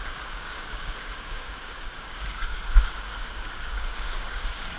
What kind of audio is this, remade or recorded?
remade